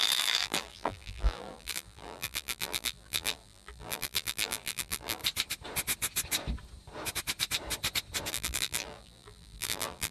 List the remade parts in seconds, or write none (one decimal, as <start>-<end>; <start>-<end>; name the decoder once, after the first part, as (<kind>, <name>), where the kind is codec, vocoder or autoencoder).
0.0-5.2 (vocoder, BigVGAN v2); 8.3-10.1